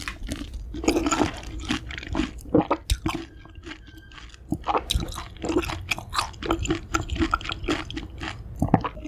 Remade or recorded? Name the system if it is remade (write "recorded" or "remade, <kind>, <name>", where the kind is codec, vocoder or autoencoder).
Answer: recorded